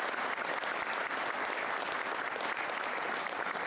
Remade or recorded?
recorded